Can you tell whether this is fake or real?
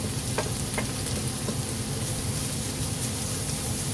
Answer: real